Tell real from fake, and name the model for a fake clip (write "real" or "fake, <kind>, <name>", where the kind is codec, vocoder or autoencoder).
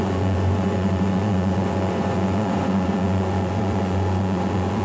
fake, vocoder, Vocos